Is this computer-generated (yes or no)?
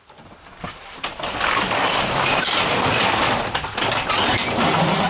no